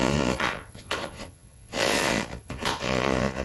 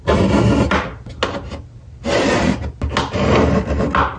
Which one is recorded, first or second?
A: second